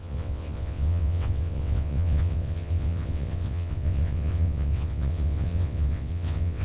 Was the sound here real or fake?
fake